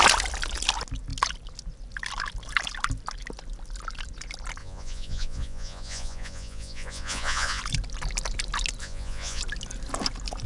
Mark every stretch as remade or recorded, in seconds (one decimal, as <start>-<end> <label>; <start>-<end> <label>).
0.0-4.6 recorded; 4.6-7.6 remade; 7.6-8.8 recorded; 8.8-9.4 remade; 9.4-10.5 recorded